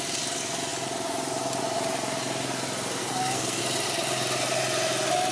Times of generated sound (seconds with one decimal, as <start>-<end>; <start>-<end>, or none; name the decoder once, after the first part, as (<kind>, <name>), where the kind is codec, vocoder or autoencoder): 3.0-3.6 (codec, SNAC)